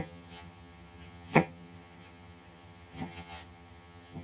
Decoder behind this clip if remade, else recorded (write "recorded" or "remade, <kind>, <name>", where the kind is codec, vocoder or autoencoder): remade, vocoder, HiFi-GAN